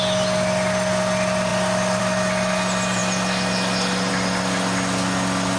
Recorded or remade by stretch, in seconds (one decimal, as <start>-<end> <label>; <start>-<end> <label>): 0.0-5.6 recorded